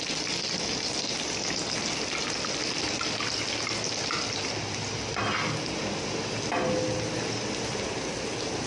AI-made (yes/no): no